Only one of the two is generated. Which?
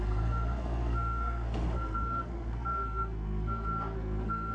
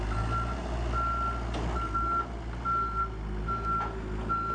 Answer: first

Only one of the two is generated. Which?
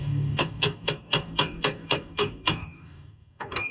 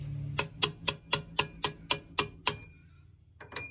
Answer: first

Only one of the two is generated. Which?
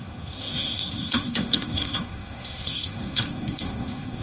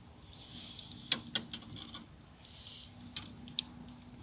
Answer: first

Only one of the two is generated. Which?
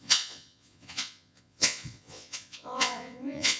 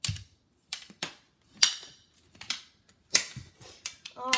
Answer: first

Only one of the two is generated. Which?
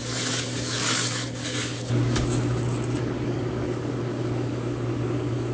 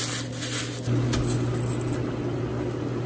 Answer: first